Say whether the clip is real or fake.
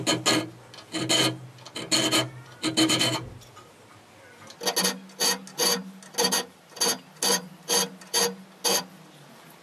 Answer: real